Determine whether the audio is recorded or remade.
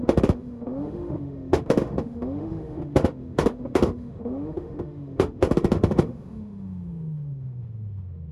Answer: remade